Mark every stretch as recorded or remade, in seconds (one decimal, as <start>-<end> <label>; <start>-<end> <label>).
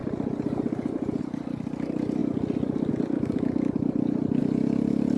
0.0-1.2 recorded; 1.2-2.2 remade; 2.2-2.9 recorded; 2.9-4.4 remade; 4.4-5.2 recorded